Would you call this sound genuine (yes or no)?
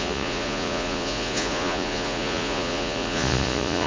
no